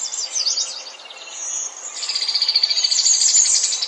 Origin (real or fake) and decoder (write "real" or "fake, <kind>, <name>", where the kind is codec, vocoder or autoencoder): real